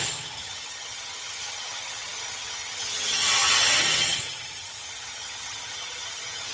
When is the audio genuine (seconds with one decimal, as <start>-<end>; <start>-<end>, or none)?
none